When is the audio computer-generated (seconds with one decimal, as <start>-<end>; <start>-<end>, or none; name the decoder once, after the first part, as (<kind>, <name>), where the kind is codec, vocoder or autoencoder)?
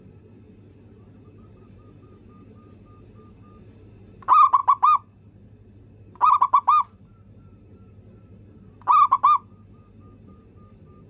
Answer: none